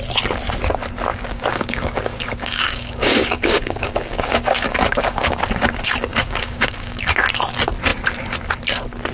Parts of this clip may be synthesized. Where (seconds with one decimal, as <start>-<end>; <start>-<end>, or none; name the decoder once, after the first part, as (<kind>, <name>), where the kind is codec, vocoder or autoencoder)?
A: 1.1-5.4 (codec, DAC); 6.1-7.0